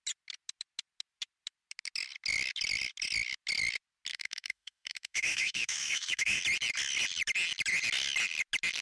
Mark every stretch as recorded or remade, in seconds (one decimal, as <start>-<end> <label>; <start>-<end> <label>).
0.0-4.1 recorded; 4.1-6.4 remade; 6.4-8.8 recorded